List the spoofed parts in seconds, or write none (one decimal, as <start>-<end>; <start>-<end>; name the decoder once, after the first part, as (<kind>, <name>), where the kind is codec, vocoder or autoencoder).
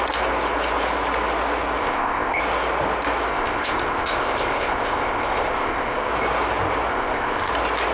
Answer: 1.8-2.4 (codec, ZipCodec); 3.3-6.1; 6.9-7.5